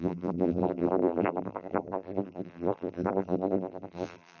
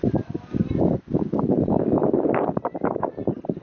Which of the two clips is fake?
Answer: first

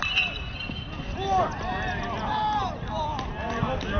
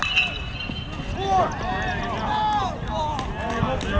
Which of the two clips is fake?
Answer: first